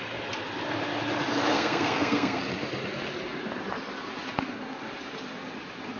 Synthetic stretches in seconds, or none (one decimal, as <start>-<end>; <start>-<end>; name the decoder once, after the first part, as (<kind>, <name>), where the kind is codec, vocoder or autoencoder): 1.5-2.4 (codec, SNAC)